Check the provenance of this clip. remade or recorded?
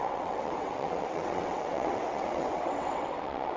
remade